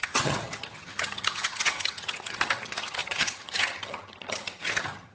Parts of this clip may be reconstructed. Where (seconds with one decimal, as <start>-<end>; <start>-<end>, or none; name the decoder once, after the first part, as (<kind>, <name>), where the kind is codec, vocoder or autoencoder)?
0.0-5.1 (vocoder, HiFi-GAN)